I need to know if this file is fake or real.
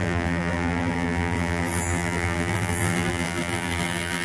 fake